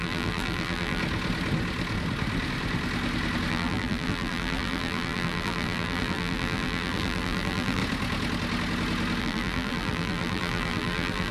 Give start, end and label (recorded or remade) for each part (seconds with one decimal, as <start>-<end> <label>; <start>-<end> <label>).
0.0-1.0 remade; 1.0-3.5 recorded; 3.5-7.8 remade; 7.8-9.2 recorded; 9.2-11.3 remade